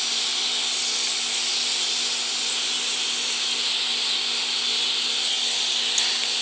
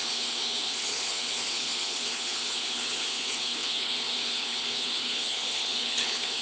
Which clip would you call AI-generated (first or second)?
second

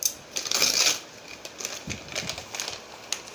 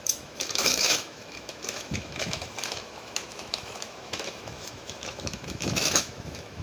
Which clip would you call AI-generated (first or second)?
second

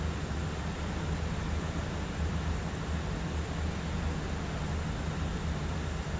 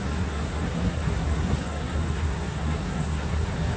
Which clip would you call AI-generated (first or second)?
second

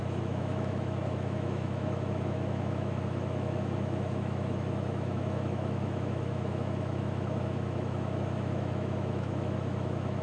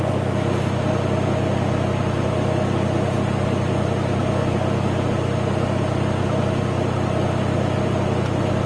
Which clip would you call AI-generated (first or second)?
first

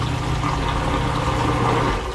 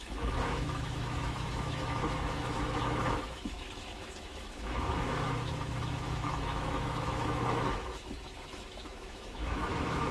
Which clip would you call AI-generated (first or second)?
second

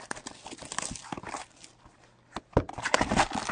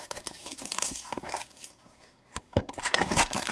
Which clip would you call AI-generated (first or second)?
second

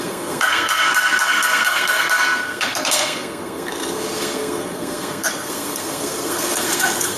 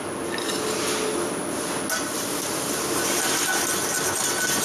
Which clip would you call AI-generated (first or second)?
first